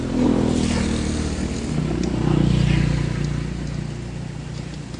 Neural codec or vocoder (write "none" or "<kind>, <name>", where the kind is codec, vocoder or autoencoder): none